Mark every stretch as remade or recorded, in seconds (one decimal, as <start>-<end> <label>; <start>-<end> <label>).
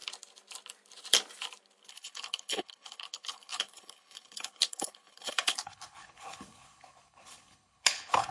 0.0-1.9 recorded; 1.9-8.3 remade